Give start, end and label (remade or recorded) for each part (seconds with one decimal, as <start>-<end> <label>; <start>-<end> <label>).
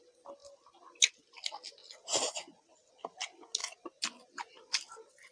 0.0-5.3 recorded